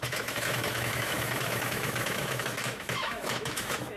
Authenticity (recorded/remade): remade